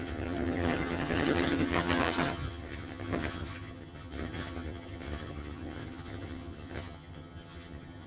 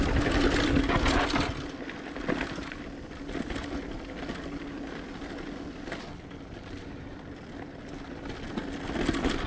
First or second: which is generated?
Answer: first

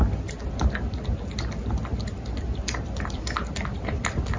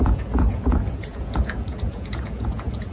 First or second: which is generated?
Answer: second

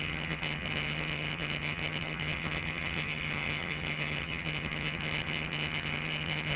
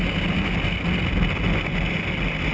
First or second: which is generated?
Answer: first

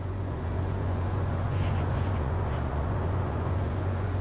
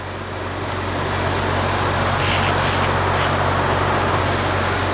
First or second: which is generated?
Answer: first